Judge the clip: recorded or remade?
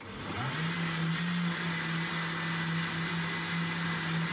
recorded